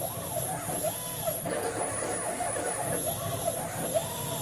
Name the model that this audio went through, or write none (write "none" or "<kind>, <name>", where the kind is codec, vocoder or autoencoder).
none